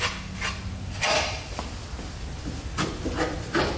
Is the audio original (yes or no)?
yes